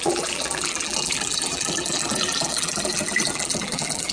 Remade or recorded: remade